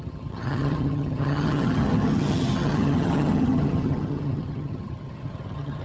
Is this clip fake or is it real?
fake